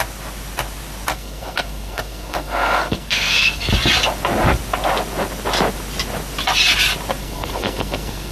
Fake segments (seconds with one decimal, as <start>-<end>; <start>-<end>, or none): 1.1-3.7; 7.2-8.3